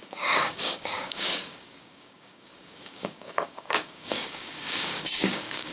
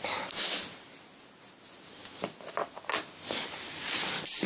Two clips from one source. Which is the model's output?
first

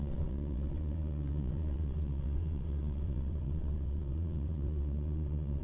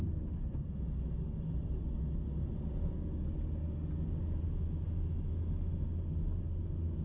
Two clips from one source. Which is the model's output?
first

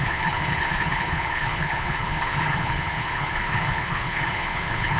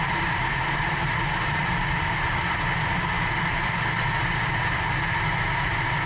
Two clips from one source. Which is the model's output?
first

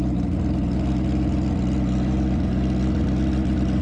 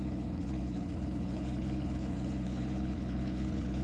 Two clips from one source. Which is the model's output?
second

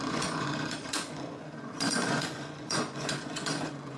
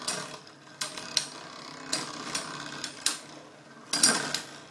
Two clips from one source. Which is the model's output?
first